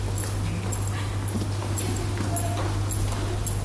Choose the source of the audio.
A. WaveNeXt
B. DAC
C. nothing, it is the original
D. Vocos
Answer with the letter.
C